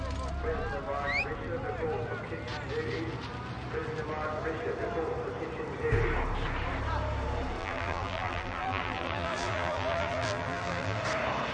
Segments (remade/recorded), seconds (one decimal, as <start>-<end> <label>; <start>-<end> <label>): 0.0-7.6 recorded; 7.6-11.0 remade; 11.0-11.5 recorded